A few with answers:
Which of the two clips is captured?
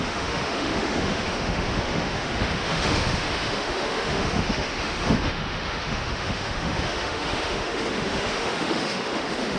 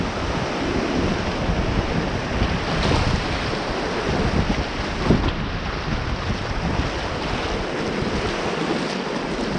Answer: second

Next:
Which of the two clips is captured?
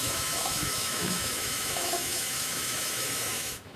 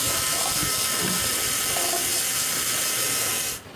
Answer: second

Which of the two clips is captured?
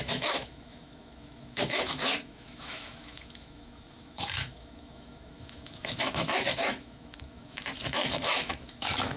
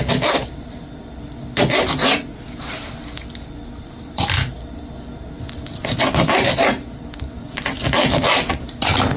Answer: second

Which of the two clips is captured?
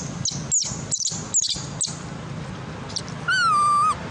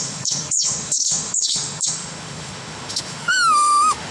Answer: first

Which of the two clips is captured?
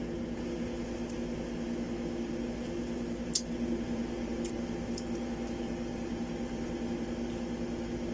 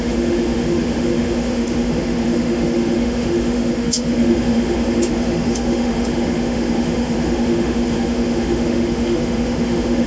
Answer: first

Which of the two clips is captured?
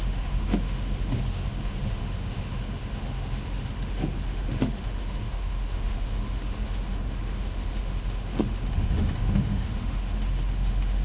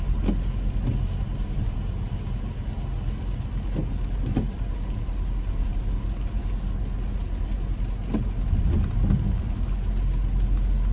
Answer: second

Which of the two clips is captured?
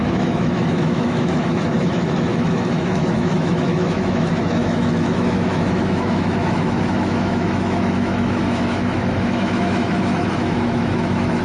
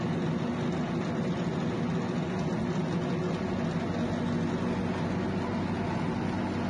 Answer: second